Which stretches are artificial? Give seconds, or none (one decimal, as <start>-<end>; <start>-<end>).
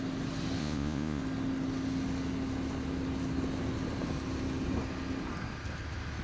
0.6-1.2